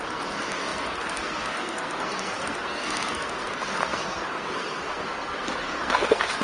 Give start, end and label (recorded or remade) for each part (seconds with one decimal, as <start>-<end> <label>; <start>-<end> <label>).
0.0-6.4 remade